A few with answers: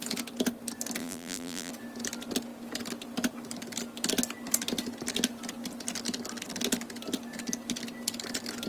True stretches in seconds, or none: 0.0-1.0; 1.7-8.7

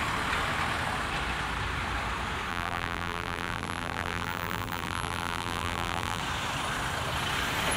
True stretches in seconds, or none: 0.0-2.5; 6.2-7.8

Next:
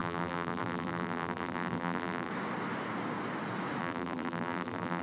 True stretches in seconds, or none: 2.3-3.8

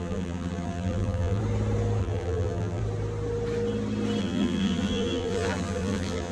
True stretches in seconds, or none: 1.4-2.0; 2.8-4.2

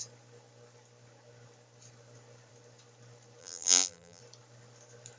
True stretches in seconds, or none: 0.0-3.4; 4.2-5.2